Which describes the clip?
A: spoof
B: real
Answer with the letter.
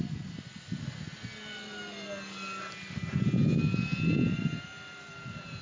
B